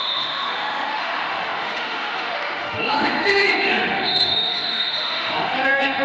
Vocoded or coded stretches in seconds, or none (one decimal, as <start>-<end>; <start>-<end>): 0.0-6.0